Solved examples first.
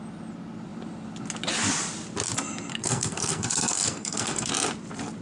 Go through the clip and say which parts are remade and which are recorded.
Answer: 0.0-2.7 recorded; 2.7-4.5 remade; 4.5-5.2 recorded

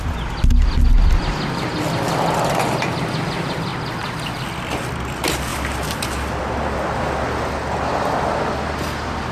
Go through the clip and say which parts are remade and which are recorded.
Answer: 0.0-9.3 recorded